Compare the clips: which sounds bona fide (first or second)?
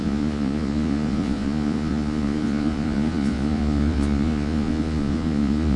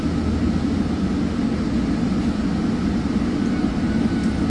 second